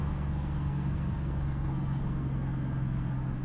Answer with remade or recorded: remade